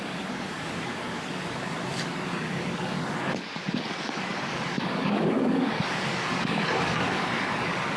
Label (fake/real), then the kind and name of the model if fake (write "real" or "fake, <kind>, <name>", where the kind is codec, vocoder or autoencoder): fake, codec, DAC